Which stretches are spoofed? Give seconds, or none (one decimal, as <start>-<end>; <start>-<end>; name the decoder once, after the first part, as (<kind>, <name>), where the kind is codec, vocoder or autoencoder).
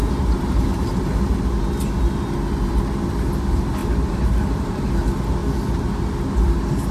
0.0-1.3 (vocoder, BigVGAN v2); 3.8-4.9